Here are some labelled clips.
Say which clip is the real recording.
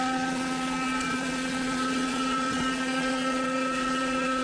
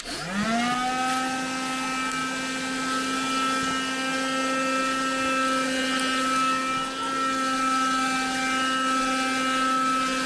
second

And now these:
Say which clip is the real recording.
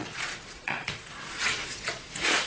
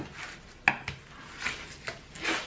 second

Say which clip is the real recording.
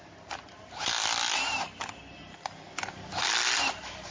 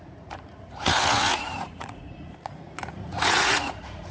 first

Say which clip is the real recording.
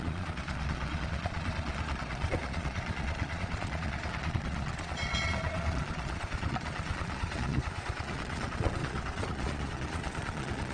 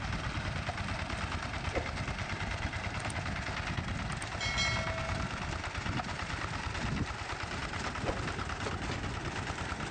second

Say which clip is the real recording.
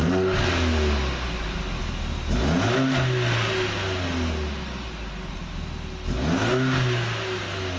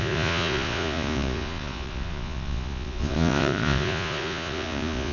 first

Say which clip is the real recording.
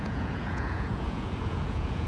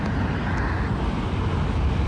second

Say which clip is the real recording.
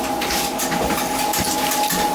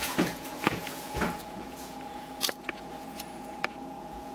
first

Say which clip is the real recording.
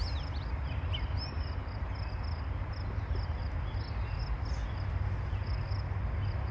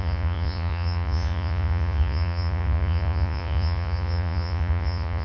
first